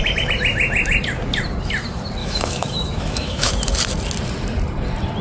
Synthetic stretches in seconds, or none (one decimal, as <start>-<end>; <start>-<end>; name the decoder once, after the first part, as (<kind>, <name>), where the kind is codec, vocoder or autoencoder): 2.2-3.5 (autoencoder, DAC-VAE)